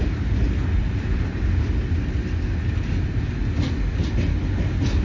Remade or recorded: recorded